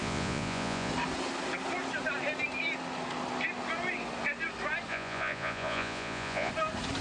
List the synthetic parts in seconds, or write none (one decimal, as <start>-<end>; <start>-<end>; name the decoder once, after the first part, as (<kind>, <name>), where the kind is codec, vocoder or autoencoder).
0.0-0.9 (vocoder, Vocos); 4.9-6.5

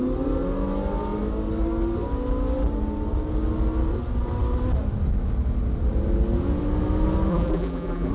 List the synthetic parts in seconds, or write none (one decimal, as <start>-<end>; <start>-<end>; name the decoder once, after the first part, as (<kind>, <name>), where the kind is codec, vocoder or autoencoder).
7.3-8.1 (vocoder, BigVGAN v2)

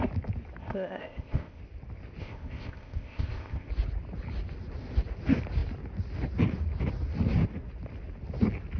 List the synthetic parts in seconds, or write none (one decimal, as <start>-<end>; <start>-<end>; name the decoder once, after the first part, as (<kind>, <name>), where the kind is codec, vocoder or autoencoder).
0.6-1.6 (codec, ZipCodec); 2.2-3.7

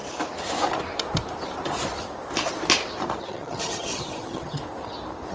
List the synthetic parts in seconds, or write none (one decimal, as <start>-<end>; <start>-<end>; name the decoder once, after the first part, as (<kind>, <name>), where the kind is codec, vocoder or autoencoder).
3.2-4.6 (vocoder, HiFi-GAN)

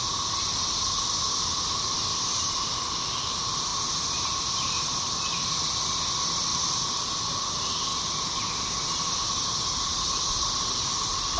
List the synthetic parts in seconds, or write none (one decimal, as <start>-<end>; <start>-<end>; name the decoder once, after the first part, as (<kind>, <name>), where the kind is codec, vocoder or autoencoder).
2.1-3.0 (vocoder, BigVGAN v2); 3.7-5.5; 7.9-8.5

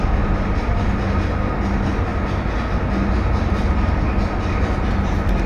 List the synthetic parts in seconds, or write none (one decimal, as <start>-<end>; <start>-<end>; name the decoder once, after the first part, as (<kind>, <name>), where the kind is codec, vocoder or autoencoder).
0.0-1.0 (vocoder, BigVGAN v2)